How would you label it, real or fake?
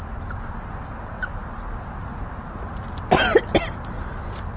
real